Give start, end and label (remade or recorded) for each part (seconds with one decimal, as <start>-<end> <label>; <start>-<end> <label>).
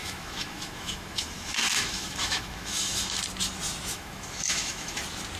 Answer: 0.0-3.2 remade; 3.2-3.9 recorded; 3.9-5.0 remade; 5.0-5.4 recorded